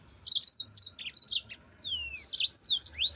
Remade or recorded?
recorded